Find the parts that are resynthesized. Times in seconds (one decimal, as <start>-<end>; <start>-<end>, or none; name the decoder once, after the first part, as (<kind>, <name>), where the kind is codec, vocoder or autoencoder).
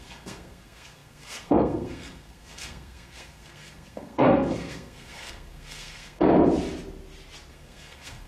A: 0.0-6.3 (codec, SNAC); 7.5-8.3